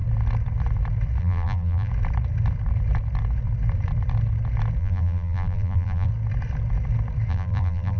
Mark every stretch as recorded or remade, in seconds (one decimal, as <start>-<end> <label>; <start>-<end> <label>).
0.0-1.2 recorded; 1.2-1.9 remade; 1.9-4.8 recorded; 4.8-6.1 remade; 6.1-7.3 recorded; 7.3-8.0 remade